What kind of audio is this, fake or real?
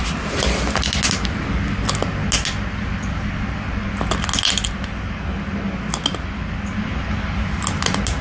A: real